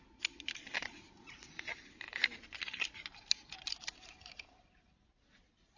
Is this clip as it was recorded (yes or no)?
yes